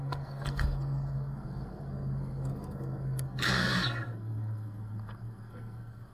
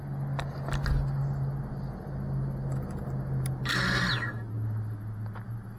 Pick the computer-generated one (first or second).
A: first